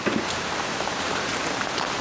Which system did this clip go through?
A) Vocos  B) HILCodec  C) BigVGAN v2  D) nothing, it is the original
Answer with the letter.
C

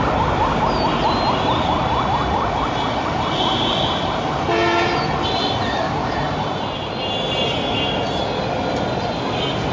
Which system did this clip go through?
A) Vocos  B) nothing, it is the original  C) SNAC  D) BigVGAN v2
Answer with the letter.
B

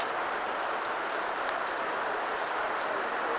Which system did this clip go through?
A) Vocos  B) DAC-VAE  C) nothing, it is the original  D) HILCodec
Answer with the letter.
C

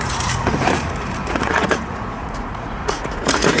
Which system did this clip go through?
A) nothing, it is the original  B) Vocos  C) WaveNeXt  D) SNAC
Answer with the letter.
B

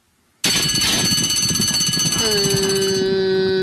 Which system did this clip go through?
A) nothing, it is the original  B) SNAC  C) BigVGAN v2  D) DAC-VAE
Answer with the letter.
A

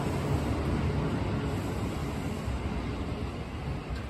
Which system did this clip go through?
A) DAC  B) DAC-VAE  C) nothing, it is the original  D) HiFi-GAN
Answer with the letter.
C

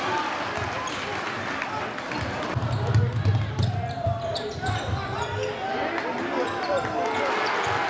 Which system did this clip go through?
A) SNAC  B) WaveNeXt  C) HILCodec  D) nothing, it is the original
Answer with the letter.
D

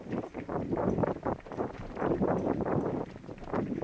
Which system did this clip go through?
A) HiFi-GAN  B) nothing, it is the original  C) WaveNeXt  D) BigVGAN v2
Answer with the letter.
D